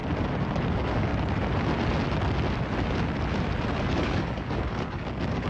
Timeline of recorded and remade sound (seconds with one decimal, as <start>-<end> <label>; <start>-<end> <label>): 0.0-0.7 recorded; 0.7-1.1 remade; 1.1-3.8 recorded; 3.8-5.5 remade